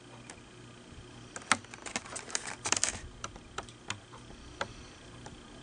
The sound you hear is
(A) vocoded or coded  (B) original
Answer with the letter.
B